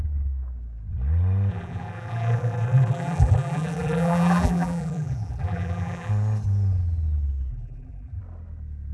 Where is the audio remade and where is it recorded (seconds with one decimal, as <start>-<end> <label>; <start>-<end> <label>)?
0.0-1.5 recorded; 1.5-6.1 remade; 6.1-7.5 recorded; 7.5-8.2 remade; 8.2-8.9 recorded